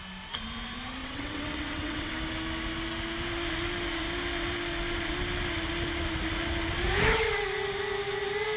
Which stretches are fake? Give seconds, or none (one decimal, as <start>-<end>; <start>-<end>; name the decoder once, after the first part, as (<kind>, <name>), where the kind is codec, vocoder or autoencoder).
1.0-2.1 (vocoder, WaveNeXt)